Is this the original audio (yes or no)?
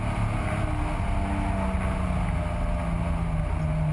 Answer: yes